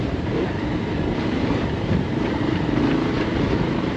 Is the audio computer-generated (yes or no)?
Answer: yes